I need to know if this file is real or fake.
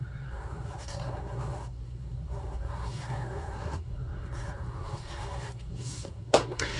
fake